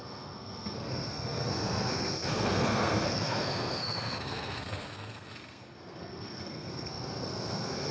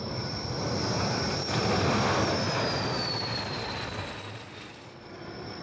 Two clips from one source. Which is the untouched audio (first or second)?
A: second